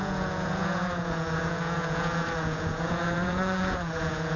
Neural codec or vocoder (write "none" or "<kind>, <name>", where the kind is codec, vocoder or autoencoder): vocoder, Vocos